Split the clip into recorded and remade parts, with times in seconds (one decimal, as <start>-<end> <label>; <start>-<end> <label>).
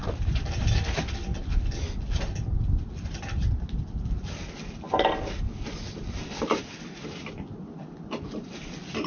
0.0-9.1 recorded